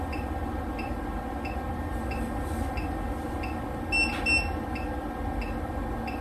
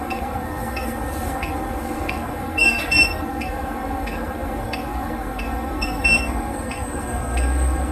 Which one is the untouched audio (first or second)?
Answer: first